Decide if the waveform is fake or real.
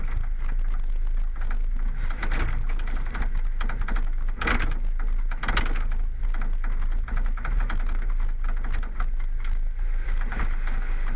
real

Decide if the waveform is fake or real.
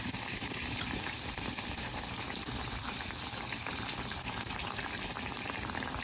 fake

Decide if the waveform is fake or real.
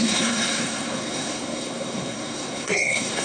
fake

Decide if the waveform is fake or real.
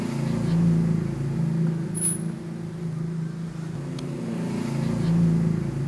real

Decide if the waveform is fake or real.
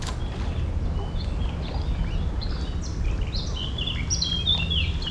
real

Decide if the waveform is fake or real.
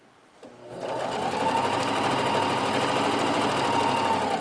real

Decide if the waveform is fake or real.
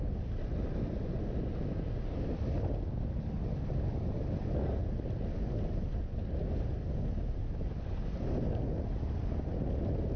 real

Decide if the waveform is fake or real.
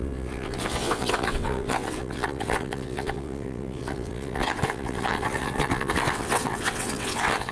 fake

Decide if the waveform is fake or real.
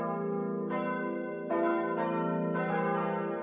real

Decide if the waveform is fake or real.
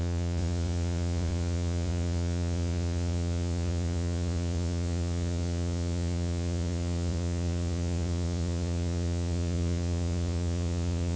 fake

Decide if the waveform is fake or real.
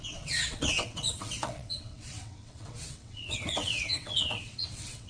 fake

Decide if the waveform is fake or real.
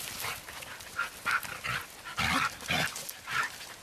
real